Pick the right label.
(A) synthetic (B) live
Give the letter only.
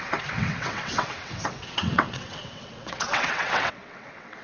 A